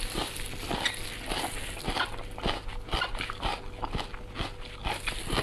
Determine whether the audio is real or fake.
real